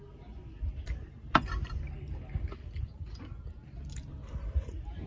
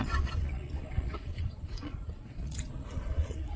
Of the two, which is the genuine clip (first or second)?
first